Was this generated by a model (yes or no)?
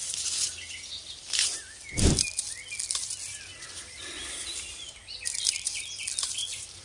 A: no